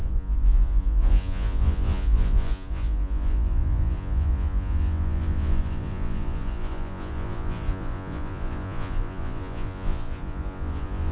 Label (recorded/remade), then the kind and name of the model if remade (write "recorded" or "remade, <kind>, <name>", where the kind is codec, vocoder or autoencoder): remade, vocoder, Vocos